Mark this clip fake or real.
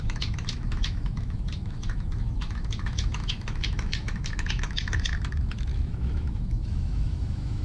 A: fake